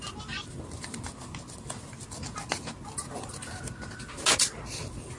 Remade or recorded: recorded